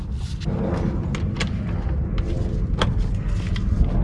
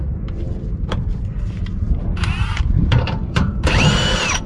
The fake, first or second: second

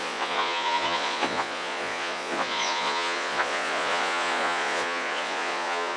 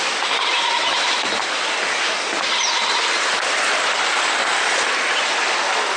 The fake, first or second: first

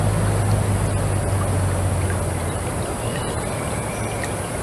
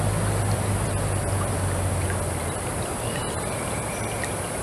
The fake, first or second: second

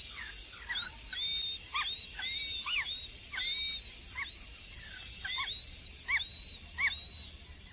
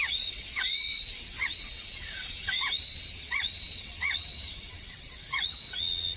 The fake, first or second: second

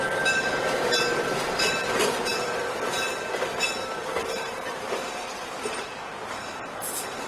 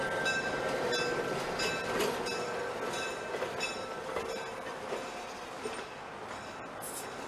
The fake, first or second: first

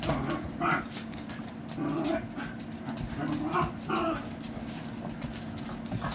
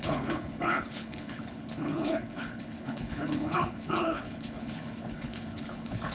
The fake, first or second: second